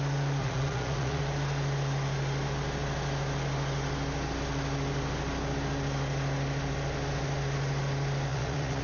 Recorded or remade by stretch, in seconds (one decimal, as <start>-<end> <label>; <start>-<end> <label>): 0.0-0.4 recorded; 0.4-1.2 remade; 1.2-8.3 recorded; 8.3-8.8 remade

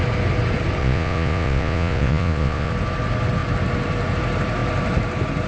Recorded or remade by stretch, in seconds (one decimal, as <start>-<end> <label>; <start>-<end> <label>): 0.0-0.8 recorded; 0.8-2.7 remade; 2.7-5.5 recorded

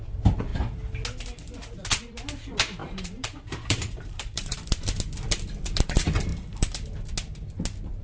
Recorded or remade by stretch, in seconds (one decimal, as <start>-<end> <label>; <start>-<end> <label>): 0.0-2.8 recorded; 2.8-4.6 remade; 4.6-6.3 recorded; 6.3-6.9 remade; 6.9-8.0 recorded